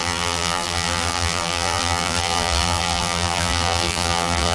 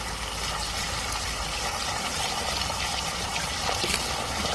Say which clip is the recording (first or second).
second